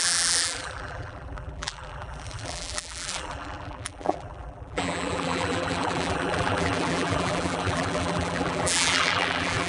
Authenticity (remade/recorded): remade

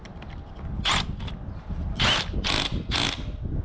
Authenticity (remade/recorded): recorded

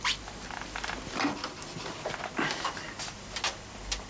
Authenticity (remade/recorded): recorded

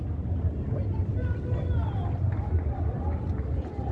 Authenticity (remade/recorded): recorded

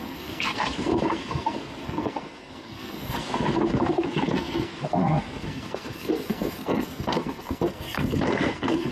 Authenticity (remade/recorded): remade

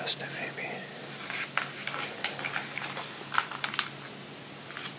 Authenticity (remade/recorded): recorded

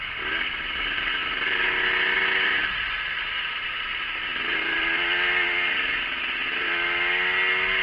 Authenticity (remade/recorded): recorded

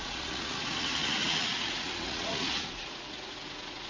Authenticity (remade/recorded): remade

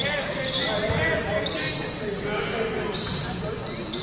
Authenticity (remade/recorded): recorded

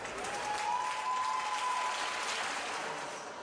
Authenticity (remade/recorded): recorded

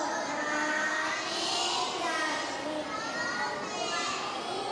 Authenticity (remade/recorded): recorded